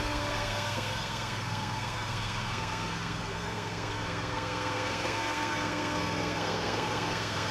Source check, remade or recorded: remade